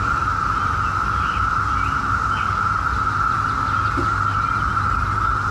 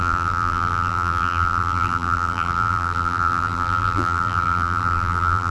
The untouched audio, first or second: first